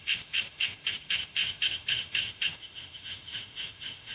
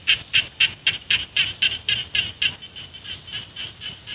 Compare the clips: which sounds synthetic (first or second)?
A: first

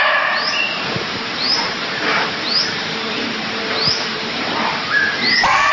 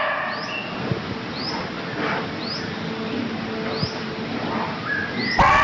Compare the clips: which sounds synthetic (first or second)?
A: first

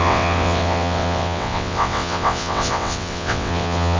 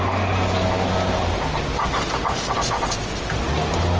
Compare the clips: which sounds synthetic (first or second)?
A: first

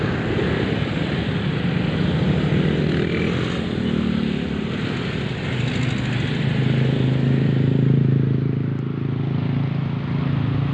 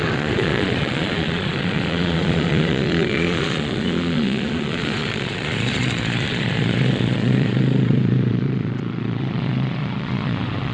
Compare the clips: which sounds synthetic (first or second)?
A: second